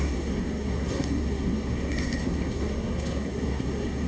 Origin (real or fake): fake